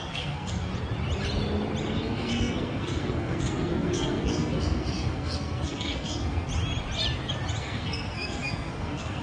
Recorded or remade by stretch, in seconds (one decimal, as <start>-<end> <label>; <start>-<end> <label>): 0.0-0.7 remade; 0.7-1.9 recorded; 1.9-6.5 remade; 6.5-7.6 recorded; 7.6-9.2 remade